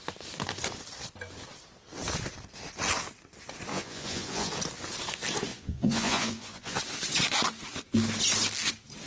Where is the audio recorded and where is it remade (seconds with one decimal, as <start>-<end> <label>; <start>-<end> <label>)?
0.0-3.7 recorded; 3.7-4.5 remade; 4.5-5.5 recorded; 5.5-6.8 remade; 6.8-9.1 recorded